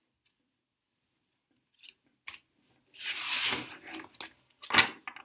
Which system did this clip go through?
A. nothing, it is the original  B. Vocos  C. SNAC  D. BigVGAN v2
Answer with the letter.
A